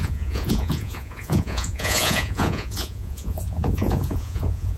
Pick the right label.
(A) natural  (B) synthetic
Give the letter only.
B